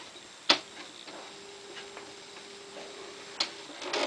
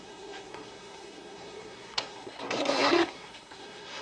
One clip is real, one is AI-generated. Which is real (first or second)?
first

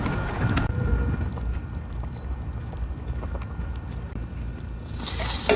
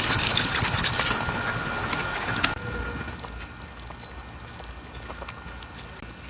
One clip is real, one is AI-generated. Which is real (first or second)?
second